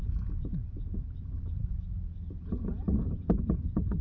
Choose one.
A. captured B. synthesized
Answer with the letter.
B